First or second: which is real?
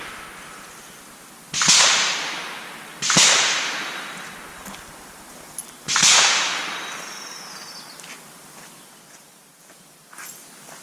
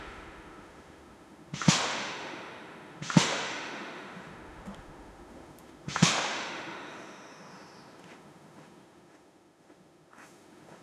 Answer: first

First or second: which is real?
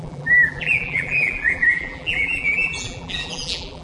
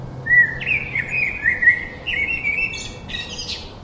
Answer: second